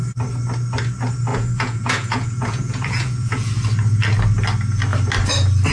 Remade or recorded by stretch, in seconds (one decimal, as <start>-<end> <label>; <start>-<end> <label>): 0.0-1.3 recorded; 1.3-3.5 remade; 3.5-5.7 recorded